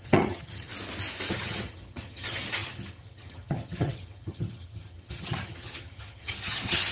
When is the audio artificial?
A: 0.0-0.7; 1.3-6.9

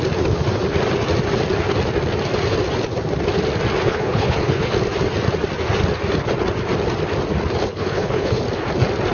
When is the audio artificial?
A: 3.8-4.7; 7.7-8.4

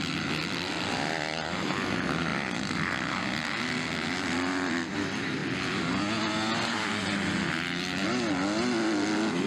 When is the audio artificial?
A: none